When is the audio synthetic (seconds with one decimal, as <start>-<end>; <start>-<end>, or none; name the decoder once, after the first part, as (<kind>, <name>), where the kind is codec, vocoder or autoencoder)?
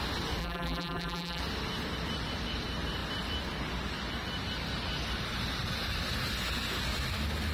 0.4-1.4 (vocoder, BigVGAN v2)